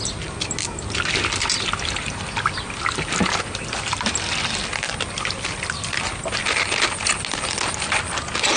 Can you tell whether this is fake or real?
real